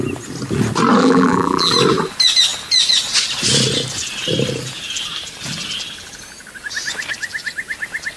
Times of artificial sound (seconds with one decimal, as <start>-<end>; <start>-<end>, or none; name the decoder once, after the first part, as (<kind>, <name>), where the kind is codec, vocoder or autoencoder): 1.0-1.7 (vocoder, BigVGAN v2)